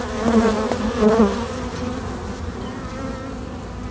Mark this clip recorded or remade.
recorded